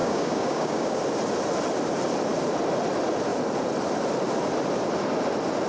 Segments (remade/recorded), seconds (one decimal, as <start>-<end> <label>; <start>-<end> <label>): 0.0-1.0 remade; 1.0-5.7 recorded